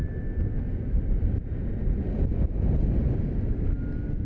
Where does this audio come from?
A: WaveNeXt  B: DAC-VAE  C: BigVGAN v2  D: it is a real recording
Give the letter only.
D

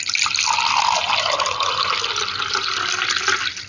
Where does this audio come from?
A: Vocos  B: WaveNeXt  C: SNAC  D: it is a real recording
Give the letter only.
D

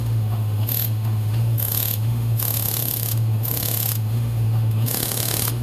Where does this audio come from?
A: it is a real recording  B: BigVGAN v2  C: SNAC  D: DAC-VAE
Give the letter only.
D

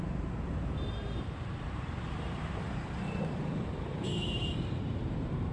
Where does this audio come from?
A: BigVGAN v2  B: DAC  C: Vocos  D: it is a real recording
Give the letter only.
A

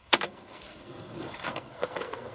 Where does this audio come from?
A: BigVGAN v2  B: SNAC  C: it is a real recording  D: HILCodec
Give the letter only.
B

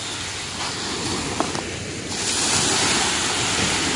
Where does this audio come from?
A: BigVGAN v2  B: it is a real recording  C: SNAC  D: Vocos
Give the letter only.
B